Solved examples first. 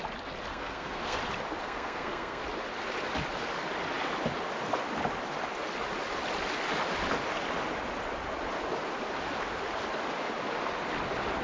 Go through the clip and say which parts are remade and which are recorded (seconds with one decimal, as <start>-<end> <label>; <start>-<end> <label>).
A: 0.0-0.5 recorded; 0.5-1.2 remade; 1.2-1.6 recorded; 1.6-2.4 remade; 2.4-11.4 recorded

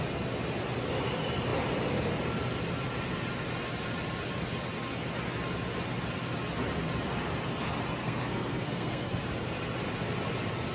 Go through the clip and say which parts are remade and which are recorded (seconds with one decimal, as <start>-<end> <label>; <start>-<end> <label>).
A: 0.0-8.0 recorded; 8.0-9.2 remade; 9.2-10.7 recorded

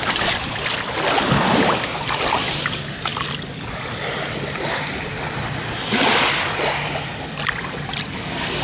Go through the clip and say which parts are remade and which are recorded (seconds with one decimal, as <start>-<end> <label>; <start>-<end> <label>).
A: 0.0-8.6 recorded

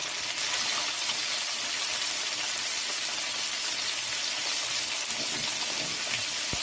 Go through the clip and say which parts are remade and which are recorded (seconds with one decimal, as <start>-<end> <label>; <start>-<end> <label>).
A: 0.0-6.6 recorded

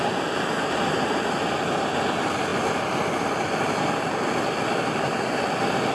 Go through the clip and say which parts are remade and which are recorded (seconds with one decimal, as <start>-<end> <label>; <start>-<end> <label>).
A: 0.0-5.9 recorded

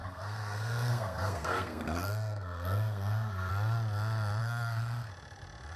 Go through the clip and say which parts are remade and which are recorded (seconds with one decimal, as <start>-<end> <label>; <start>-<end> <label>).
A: 0.0-3.5 remade; 3.5-4.4 recorded; 4.4-5.1 remade; 5.1-5.8 recorded

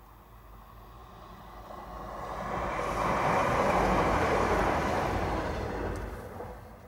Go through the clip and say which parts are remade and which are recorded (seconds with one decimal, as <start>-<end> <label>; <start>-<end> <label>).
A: 0.0-6.9 recorded